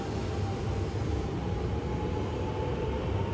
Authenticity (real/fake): real